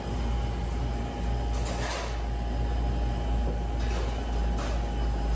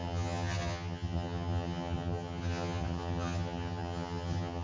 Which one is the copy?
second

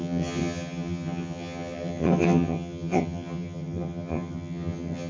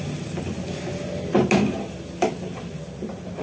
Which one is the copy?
first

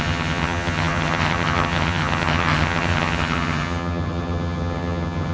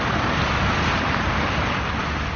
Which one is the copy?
first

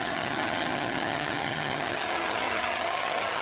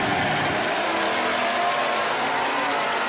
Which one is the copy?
first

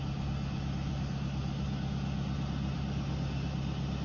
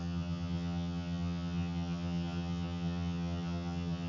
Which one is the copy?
second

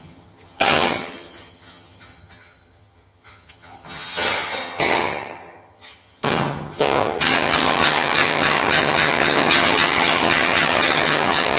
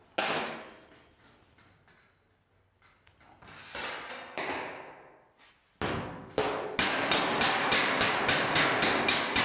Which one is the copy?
first